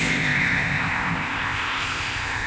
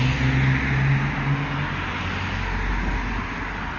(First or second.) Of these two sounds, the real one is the second